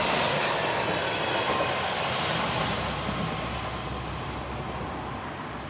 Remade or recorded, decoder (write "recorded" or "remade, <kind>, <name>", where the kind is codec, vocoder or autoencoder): recorded